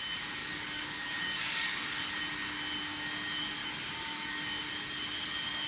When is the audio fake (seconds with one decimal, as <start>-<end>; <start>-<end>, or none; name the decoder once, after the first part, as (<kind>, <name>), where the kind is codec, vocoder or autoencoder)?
0.4-2.2 (codec, DAC); 3.6-4.7